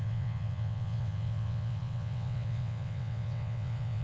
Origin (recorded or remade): remade